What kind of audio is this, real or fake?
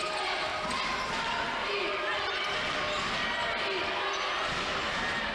real